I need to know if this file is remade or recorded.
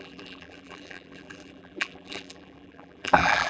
remade